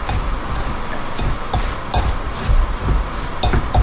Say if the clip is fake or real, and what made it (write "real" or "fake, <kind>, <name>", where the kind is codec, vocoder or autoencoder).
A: real